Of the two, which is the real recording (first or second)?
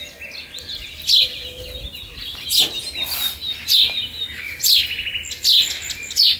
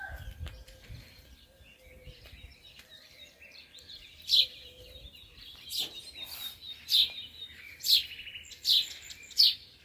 first